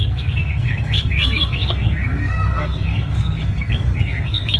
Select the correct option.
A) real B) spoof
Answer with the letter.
B